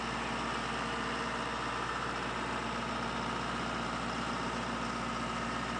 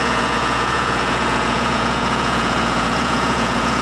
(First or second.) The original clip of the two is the first